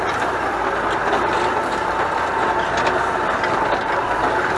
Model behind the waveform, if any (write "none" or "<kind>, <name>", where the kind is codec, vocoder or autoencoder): none